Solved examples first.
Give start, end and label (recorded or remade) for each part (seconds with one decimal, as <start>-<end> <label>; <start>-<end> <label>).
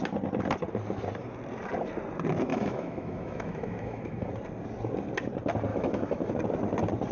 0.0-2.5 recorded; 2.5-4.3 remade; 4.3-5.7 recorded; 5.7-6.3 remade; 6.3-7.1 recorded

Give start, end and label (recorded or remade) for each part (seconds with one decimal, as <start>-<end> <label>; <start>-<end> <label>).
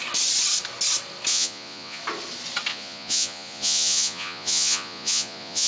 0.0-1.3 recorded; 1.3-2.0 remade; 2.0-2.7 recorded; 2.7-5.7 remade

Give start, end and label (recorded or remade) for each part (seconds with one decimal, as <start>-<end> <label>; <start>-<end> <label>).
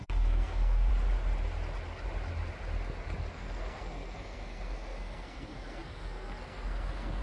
0.0-0.9 remade; 0.9-3.3 recorded; 3.3-7.2 remade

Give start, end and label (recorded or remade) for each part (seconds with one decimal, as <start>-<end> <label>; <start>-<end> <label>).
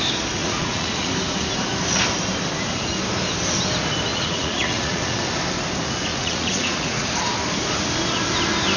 0.0-0.4 recorded; 0.4-1.1 remade; 1.1-4.1 recorded; 4.1-5.2 remade; 5.2-6.1 recorded; 6.1-7.1 remade; 7.1-8.8 recorded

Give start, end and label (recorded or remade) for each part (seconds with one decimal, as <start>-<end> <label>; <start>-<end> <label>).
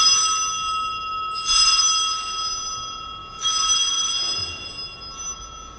0.0-5.8 recorded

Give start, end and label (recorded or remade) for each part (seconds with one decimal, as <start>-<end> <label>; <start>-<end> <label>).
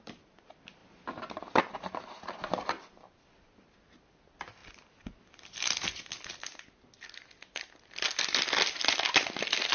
0.0-9.7 recorded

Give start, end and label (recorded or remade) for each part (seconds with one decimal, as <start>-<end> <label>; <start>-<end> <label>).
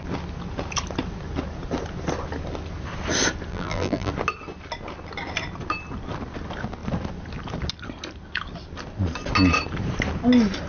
0.0-3.5 recorded; 3.5-4.1 remade; 4.1-10.7 recorded